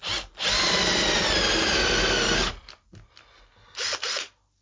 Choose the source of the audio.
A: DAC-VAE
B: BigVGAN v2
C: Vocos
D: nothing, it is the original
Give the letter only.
D